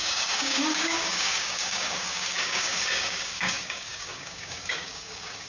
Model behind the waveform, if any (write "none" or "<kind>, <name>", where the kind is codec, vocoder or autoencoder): codec, DAC